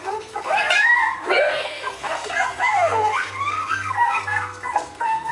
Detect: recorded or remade remade